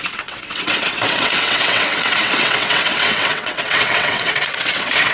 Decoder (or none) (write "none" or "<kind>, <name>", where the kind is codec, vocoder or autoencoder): vocoder, WaveNeXt